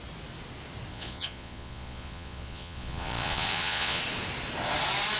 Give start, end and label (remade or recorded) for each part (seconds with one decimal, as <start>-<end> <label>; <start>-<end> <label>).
0.0-0.9 recorded; 0.9-4.0 remade; 4.0-5.2 recorded